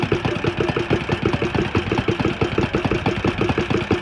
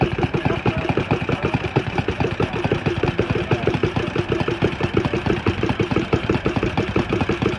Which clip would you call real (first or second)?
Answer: first